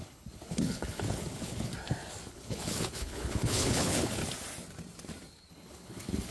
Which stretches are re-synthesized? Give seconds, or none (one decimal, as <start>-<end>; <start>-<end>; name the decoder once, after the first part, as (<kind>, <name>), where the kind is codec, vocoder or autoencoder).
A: 0.0-1.7 (codec, HILCodec); 2.3-4.2; 5.5-6.3